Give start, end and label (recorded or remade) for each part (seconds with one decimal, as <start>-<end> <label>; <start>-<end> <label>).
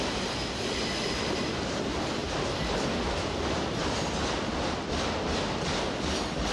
0.0-2.2 recorded; 2.2-2.9 remade; 2.9-3.8 recorded; 3.8-5.0 remade; 5.0-6.5 recorded